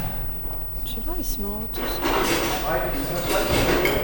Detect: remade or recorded recorded